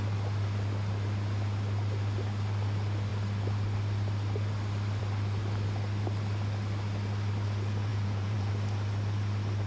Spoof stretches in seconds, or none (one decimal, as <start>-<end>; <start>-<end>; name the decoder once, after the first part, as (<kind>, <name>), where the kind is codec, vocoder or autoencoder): 7.9-8.5 (vocoder, Vocos)